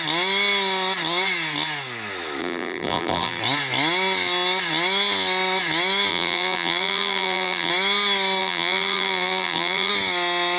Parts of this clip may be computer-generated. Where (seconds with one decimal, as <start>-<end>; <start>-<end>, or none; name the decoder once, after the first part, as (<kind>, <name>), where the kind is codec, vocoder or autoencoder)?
2.4-3.4 (vocoder, BigVGAN v2); 6.1-7.7; 8.4-9.9